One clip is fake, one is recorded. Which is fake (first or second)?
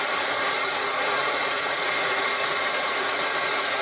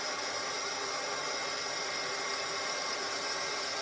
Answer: first